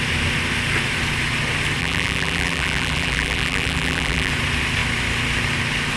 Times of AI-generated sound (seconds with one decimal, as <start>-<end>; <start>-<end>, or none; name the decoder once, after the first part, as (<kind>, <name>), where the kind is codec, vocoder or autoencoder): 1.8-4.3 (vocoder, BigVGAN v2)